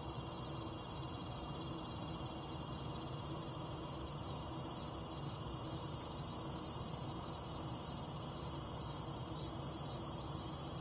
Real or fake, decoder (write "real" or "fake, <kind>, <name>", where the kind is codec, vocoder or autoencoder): fake, vocoder, BigVGAN v2